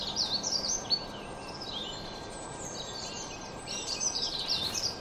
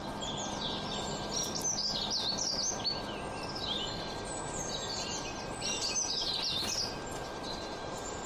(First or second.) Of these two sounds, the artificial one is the first